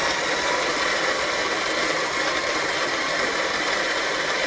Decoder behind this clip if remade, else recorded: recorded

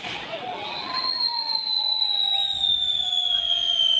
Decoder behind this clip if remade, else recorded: remade, vocoder, Vocos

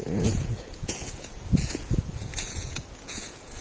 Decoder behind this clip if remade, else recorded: remade, vocoder, Vocos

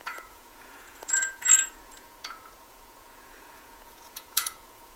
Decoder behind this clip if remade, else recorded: remade, vocoder, Vocos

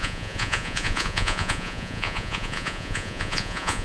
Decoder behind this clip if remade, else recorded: remade, vocoder, Vocos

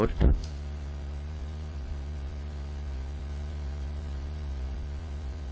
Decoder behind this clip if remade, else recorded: remade, vocoder, Vocos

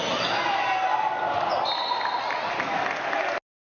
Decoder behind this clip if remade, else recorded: recorded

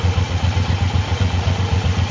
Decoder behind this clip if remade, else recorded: remade, vocoder, Vocos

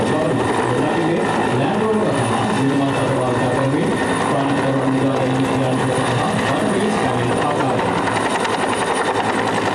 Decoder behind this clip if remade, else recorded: recorded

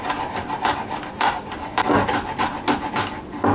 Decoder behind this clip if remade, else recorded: recorded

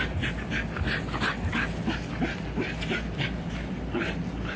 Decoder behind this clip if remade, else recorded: recorded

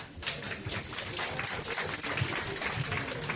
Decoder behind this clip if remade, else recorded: recorded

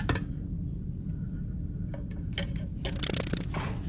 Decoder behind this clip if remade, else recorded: recorded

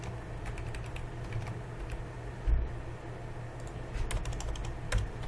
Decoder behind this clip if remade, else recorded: recorded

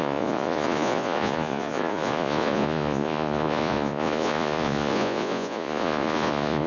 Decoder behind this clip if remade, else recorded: remade, vocoder, Vocos